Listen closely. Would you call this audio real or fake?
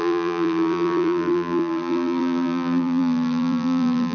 fake